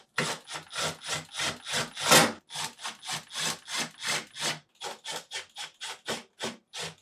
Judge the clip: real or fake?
real